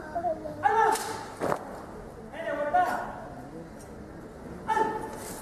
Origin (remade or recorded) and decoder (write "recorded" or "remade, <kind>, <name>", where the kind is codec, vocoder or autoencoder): recorded